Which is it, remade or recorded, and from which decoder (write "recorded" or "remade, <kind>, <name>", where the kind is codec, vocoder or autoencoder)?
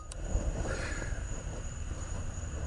remade, vocoder, BigVGAN v2